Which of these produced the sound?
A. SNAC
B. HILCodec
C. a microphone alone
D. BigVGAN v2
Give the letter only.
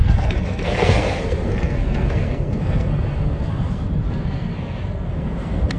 A